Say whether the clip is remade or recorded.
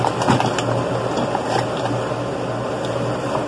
recorded